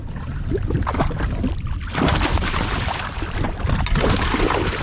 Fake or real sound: real